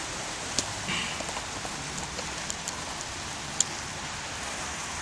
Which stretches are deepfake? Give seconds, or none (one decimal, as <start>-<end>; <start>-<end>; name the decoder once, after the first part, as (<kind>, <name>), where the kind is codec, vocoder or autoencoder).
0.0-1.0 (vocoder, BigVGAN v2); 4.0-5.0